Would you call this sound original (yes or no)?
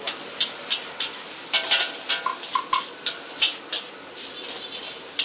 yes